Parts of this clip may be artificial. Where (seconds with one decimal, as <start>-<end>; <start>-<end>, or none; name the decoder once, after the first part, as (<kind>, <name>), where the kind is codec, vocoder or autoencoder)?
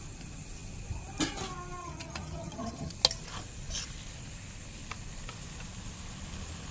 1.8-2.9 (vocoder, HiFi-GAN)